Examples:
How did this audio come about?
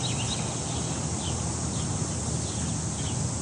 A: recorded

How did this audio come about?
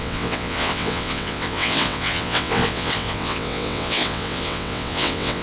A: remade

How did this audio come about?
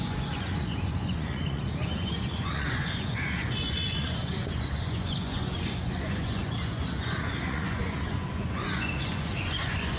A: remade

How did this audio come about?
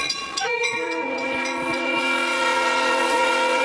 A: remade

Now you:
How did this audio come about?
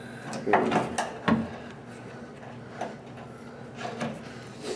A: recorded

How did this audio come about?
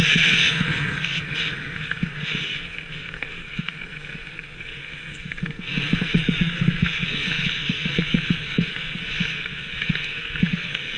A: remade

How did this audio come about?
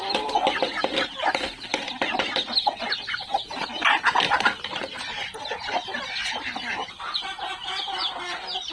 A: recorded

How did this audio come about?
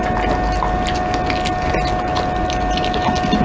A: recorded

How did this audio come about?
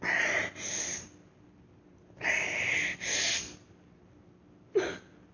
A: recorded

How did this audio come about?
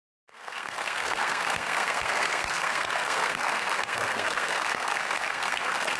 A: remade